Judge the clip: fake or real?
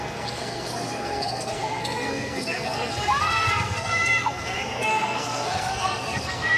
fake